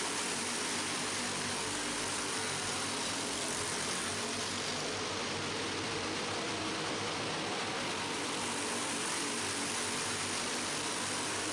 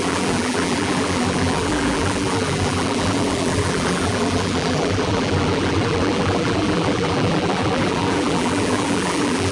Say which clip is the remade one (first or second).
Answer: second